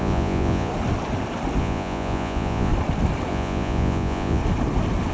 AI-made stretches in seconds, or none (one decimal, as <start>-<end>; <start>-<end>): 0.0-0.7; 1.6-2.7; 3.3-4.4